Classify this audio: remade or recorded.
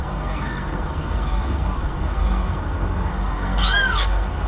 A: remade